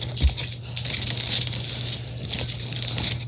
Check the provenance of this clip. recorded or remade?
recorded